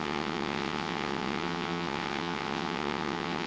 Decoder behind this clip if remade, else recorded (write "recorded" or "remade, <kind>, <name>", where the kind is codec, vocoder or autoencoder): remade, vocoder, WaveNeXt